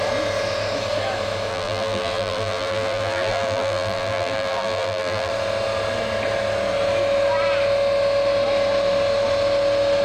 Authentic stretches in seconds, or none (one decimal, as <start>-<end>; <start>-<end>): 0.0-1.5; 5.3-10.0

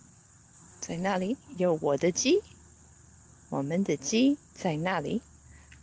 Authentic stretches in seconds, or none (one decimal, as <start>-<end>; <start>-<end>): 3.5-5.8

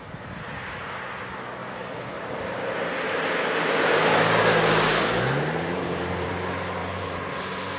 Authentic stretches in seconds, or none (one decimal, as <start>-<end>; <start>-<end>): 0.0-1.6; 3.7-5.0; 6.3-6.8; 7.3-7.8

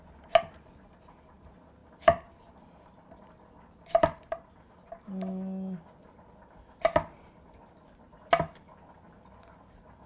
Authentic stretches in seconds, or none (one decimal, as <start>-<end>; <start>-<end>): 0.0-1.8; 4.9-10.1

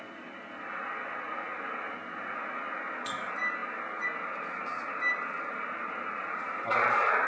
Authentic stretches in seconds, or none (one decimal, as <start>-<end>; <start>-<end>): 0.0-6.2

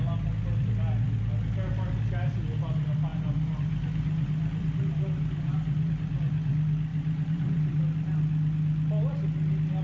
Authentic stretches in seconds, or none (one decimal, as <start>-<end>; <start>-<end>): 0.0-3.1; 5.9-6.9; 7.8-9.8